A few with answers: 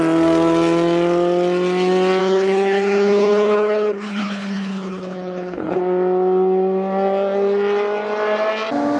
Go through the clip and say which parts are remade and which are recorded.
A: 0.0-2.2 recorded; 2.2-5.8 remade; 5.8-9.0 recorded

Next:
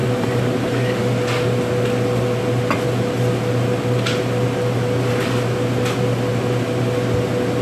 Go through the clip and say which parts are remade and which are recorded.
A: 0.0-1.0 remade; 1.0-7.6 recorded